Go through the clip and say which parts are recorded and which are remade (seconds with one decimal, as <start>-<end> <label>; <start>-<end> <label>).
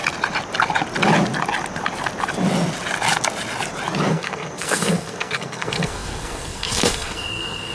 0.0-4.1 recorded; 4.1-7.7 remade